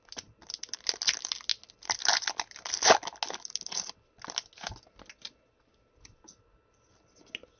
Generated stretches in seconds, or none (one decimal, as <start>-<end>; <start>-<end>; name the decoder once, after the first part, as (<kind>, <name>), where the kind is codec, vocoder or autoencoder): none